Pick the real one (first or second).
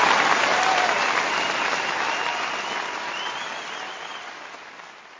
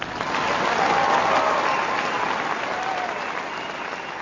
second